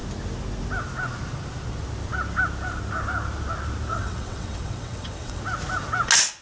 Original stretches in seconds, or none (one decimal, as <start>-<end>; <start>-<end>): 0.0-3.9; 5.4-6.4